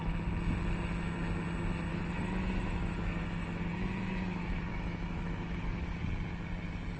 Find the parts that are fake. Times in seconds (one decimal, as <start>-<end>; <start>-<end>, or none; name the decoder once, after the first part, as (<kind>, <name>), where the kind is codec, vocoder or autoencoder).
1.9-6.0 (autoencoder, DAC-VAE)